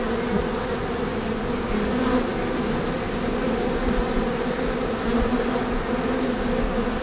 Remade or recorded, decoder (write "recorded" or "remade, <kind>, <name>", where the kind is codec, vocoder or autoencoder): recorded